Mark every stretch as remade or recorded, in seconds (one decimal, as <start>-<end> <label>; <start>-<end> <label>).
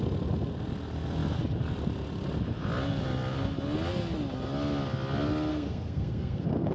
0.0-5.5 recorded; 5.5-6.7 remade